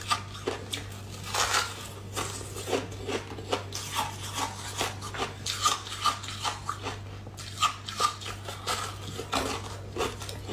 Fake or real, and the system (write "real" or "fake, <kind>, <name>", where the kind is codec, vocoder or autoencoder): real